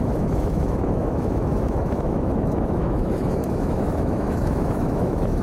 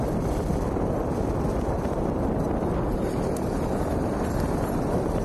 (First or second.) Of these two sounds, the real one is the second